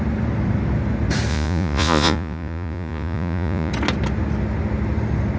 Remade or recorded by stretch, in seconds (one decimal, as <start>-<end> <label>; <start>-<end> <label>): 0.0-1.3 recorded; 1.3-3.7 remade; 3.7-5.4 recorded